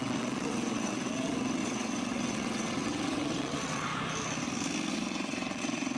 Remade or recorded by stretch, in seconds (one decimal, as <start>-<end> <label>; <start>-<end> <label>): 0.0-3.9 remade; 3.9-4.9 recorded; 4.9-6.0 remade